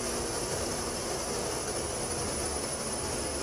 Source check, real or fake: real